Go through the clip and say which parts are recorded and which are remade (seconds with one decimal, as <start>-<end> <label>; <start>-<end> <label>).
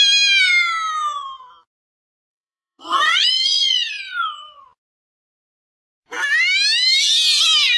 0.0-2.3 recorded; 2.3-4.6 remade; 4.6-7.8 recorded